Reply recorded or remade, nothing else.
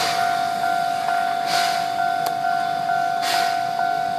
recorded